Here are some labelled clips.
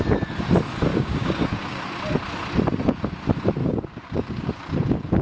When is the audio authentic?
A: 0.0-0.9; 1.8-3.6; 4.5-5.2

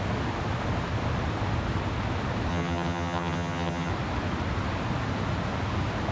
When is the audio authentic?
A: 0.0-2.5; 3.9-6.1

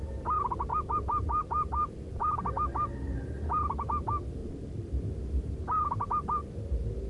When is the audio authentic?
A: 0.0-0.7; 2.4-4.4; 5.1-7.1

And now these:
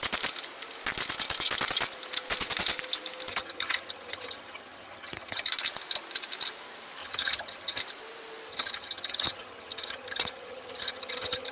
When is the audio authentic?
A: 0.0-3.3; 5.5-7.0; 7.8-8.5